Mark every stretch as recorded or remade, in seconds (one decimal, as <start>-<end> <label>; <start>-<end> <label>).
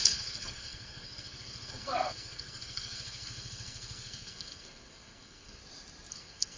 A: 0.0-5.6 remade; 5.6-6.1 recorded; 6.1-6.6 remade